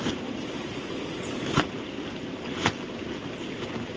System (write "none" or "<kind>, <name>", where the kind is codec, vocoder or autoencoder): none